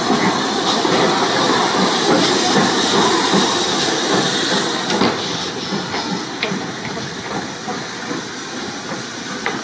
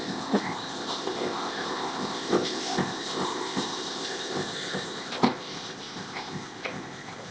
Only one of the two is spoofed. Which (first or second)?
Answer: second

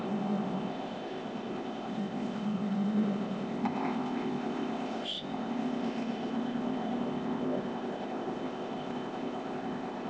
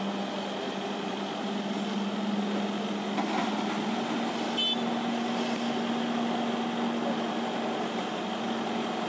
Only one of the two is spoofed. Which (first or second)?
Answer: first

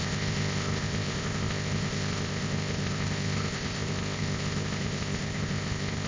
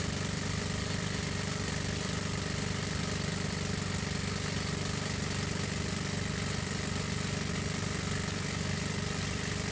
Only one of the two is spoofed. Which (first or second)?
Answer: first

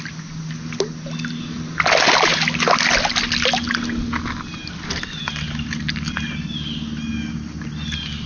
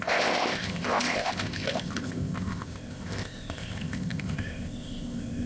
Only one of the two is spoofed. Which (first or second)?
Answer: second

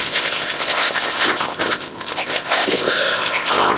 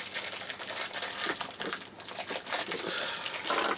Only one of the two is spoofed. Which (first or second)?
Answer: first